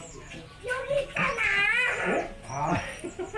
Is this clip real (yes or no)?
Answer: yes